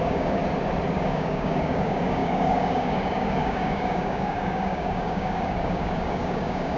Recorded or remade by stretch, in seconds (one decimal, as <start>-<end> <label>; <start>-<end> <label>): 0.0-0.4 remade; 0.4-0.9 recorded; 0.9-6.8 remade

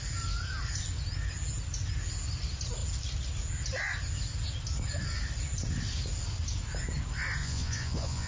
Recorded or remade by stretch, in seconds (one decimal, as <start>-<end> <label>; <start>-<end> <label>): 0.0-7.4 recorded; 7.4-8.3 remade

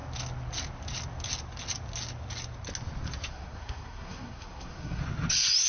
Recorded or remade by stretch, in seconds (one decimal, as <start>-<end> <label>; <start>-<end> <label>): 0.0-3.3 recorded; 3.3-5.0 remade; 5.0-5.7 recorded

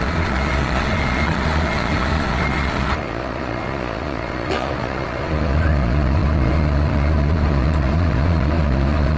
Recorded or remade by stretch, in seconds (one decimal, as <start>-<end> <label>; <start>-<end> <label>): 0.0-9.2 remade

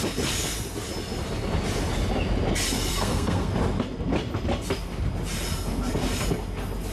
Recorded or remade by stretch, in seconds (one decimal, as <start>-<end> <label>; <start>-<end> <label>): 0.0-2.9 recorded; 2.9-3.5 remade; 3.5-6.9 recorded

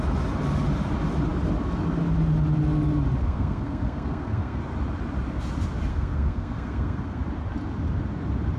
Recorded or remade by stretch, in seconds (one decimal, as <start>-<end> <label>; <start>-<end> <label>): 0.0-3.2 recorded; 3.2-4.6 remade; 4.6-5.9 recorded; 5.9-7.2 remade; 7.2-8.6 recorded